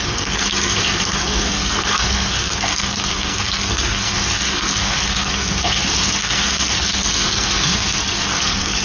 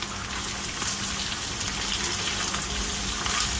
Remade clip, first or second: first